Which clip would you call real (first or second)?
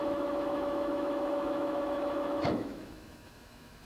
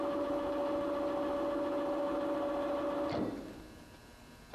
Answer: second